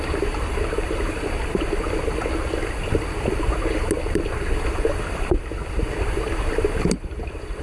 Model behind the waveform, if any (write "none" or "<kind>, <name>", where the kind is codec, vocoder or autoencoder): none